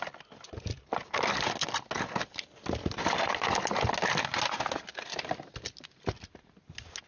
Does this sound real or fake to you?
real